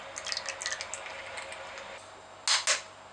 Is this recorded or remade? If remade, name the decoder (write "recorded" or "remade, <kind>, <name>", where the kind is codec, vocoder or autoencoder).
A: recorded